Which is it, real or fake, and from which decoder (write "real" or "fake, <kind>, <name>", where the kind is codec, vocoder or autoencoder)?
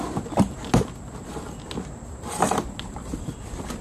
real